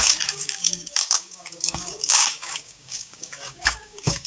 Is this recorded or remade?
remade